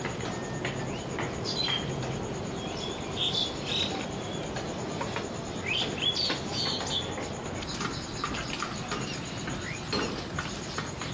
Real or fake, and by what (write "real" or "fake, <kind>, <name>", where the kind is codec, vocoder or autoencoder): real